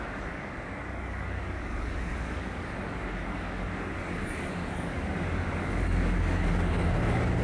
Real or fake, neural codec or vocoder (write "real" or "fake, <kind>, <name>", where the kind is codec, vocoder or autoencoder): fake, codec, DAC